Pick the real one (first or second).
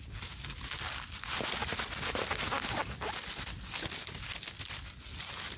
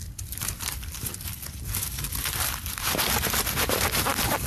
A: first